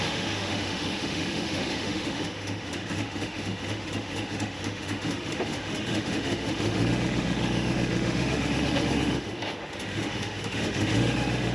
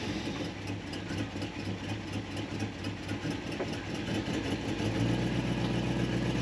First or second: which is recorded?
second